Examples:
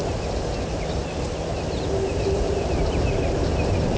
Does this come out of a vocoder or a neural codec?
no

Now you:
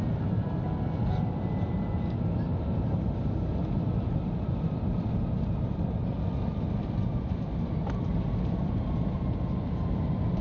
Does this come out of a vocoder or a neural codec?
no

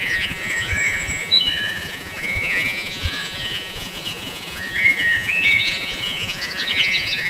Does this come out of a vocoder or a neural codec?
yes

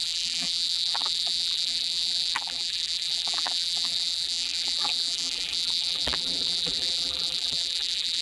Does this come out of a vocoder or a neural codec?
yes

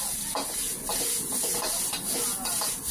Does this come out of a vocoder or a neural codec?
no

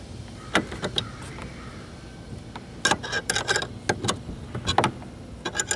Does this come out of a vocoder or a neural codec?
no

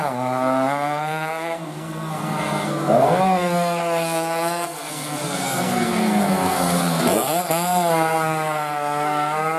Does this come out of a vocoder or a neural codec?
yes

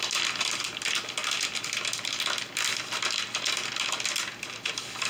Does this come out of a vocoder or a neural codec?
no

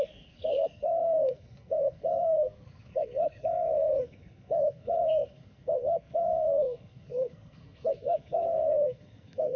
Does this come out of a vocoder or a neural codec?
yes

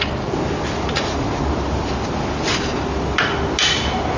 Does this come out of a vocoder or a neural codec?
no